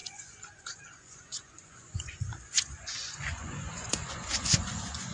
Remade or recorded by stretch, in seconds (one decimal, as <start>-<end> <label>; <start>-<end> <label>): 0.0-5.1 remade